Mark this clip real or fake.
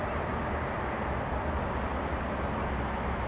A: real